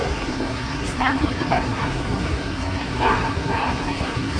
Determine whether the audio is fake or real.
fake